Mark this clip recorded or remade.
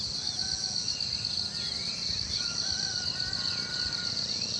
recorded